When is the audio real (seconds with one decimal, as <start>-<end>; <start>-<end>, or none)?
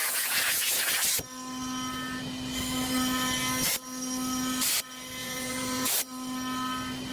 0.9-5.2; 5.9-7.1